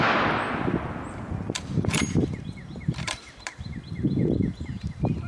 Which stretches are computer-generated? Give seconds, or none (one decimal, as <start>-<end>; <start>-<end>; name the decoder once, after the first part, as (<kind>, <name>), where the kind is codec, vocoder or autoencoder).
none